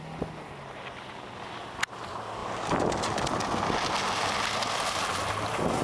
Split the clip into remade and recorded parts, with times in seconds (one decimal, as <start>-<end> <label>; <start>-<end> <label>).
0.0-5.8 recorded